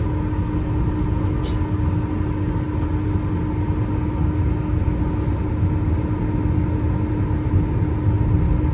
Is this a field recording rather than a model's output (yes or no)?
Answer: yes